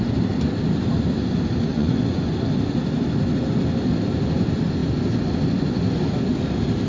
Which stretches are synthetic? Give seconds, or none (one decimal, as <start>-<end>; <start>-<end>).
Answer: 1.7-2.3